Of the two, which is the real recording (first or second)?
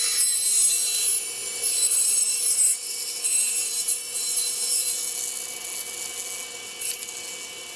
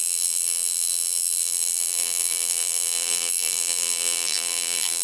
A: first